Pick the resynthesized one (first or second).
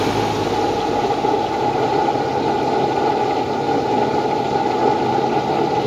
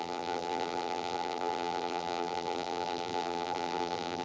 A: second